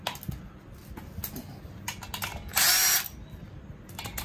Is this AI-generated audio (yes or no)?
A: no